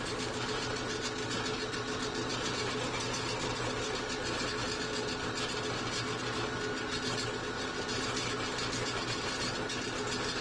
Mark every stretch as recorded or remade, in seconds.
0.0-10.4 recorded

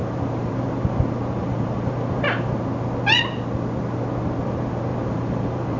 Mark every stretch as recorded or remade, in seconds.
0.0-2.6 remade; 2.6-4.9 recorded; 4.9-5.8 remade

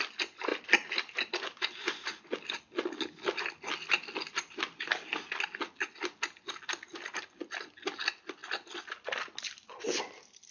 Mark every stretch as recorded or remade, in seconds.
0.0-10.5 recorded

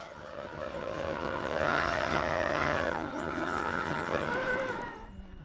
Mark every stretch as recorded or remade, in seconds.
0.0-4.3 remade; 4.3-5.4 recorded

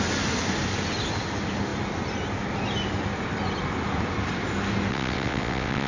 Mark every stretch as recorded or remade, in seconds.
0.0-4.9 recorded; 4.9-5.9 remade

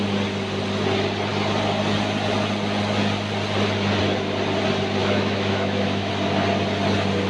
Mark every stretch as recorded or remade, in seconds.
0.0-5.0 recorded; 5.0-6.1 remade; 6.1-7.3 recorded

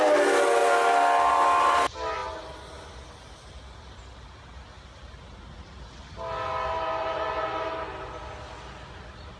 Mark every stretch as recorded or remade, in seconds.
0.0-9.4 recorded